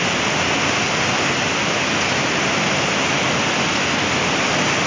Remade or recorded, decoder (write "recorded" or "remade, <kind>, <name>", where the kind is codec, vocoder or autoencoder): recorded